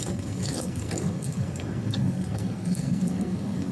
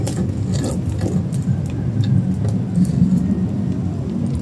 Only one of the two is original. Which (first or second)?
second